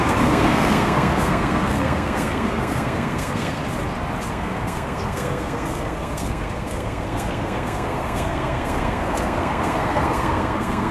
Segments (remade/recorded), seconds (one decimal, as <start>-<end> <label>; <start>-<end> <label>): 0.0-3.6 remade; 3.6-4.3 recorded; 4.3-10.9 remade